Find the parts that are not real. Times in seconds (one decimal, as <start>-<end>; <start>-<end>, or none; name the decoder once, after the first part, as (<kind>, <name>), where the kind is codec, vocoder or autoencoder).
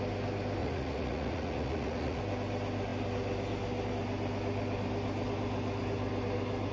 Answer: 0.6-2.2 (vocoder, Vocos)